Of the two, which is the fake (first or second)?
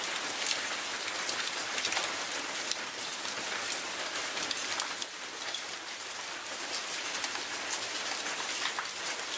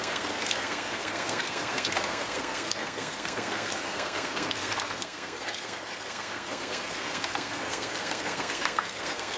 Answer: second